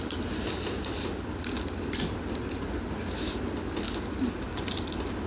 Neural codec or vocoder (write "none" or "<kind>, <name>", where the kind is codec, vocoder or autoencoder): none